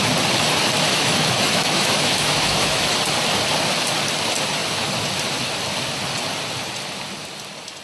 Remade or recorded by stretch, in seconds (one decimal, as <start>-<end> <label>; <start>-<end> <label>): 0.0-0.9 recorded; 0.9-3.0 remade; 3.0-7.8 recorded